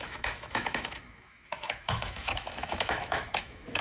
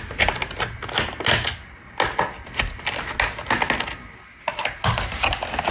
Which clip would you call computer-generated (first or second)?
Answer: first